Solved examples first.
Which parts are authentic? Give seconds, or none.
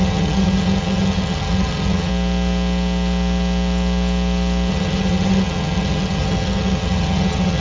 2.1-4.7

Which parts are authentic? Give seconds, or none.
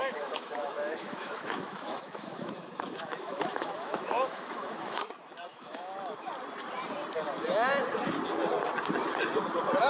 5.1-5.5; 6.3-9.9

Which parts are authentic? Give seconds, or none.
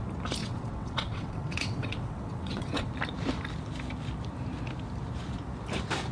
0.0-0.4; 2.9-6.1